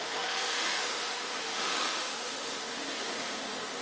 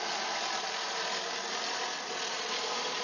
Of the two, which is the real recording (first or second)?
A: second